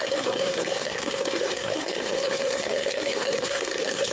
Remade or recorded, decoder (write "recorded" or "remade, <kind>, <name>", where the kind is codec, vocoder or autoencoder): remade, codec, SNAC